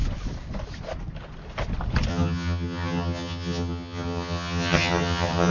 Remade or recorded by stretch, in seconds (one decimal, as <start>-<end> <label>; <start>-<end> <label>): 0.0-2.1 recorded; 2.1-5.5 remade